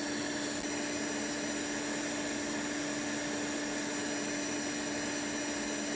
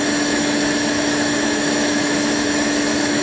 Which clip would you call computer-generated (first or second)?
second